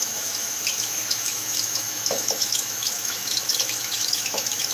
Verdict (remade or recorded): remade